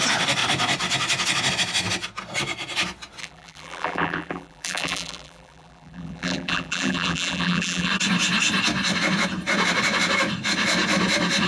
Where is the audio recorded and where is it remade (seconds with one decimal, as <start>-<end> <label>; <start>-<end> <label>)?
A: 0.0-3.2 recorded; 3.2-7.9 remade; 7.9-11.5 recorded